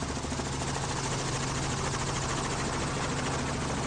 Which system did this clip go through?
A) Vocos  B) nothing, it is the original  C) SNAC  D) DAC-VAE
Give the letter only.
B